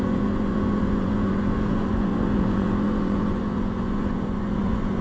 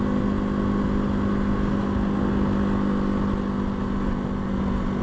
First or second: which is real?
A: second